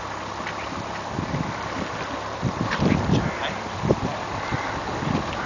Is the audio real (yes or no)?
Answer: yes